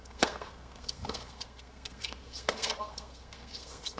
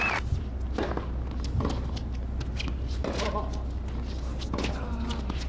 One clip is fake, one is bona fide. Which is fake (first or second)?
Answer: first